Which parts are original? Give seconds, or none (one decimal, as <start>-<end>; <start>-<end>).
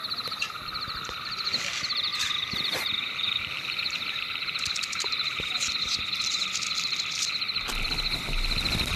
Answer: 0.0-2.1; 5.7-9.0